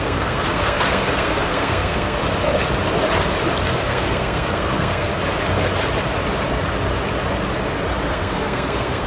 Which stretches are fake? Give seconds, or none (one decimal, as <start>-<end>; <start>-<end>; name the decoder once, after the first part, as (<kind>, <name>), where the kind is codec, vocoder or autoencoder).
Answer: 0.0-2.2 (codec, SNAC); 3.7-5.1; 8.1-9.1